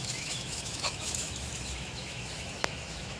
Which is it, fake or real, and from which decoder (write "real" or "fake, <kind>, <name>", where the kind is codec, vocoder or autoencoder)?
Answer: fake, autoencoder, DAC-VAE